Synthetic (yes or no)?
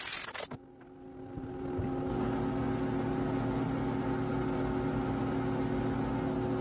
no